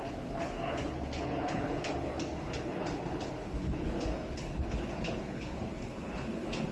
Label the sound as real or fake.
fake